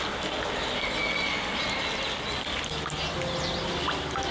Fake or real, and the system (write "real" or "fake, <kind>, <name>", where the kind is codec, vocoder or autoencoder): real